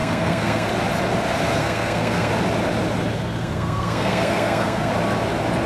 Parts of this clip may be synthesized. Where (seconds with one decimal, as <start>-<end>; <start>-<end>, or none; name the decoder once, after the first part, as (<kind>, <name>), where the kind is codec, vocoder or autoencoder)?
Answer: 0.0-0.7 (codec, SNAC); 1.6-2.3; 3.4-4.9